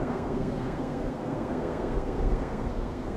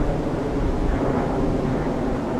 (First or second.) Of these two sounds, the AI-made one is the first